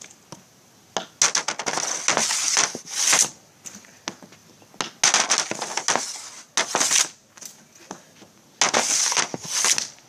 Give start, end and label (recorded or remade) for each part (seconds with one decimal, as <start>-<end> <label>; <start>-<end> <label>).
0.0-10.1 recorded